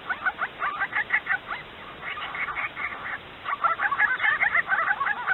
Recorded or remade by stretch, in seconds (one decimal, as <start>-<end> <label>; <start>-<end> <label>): 0.0-5.3 recorded